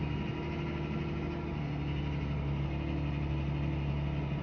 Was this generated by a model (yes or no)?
no